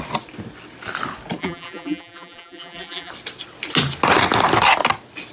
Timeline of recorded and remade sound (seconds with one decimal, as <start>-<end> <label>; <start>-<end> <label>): 0.0-1.4 recorded; 1.4-3.1 remade; 3.1-5.3 recorded